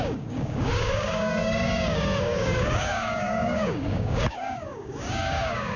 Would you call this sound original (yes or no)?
no